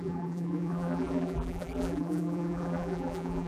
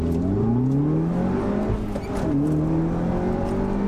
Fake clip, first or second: first